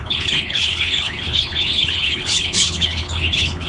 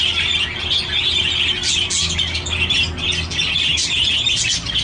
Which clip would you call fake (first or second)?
first